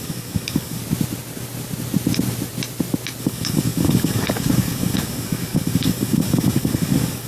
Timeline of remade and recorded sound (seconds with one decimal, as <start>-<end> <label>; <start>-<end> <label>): 0.0-0.8 remade; 0.8-3.2 recorded; 3.2-7.3 remade